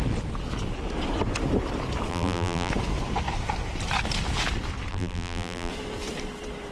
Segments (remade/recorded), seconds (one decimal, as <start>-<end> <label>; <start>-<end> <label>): 0.0-2.1 recorded; 2.1-2.7 remade; 2.7-4.9 recorded; 4.9-5.7 remade; 5.7-6.7 recorded